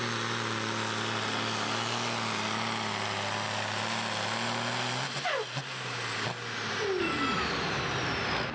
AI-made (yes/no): no